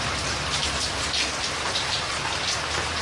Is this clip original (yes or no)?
yes